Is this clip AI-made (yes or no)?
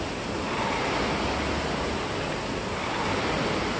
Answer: no